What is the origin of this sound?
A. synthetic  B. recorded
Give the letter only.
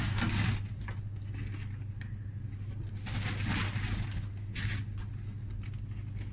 B